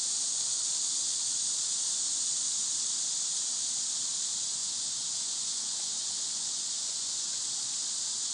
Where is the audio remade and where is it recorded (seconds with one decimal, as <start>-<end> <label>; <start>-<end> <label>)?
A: 0.0-4.6 recorded; 4.6-7.5 remade; 7.5-8.3 recorded